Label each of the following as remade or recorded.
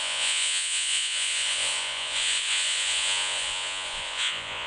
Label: remade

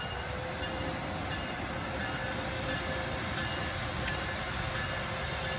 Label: recorded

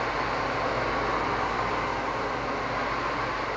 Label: recorded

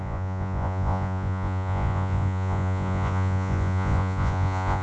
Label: remade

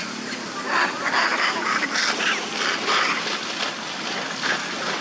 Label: recorded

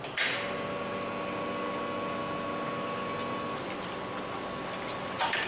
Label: recorded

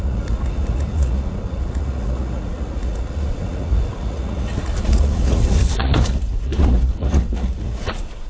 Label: remade